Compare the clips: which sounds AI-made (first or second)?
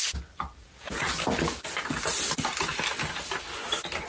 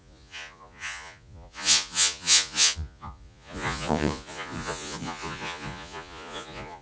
second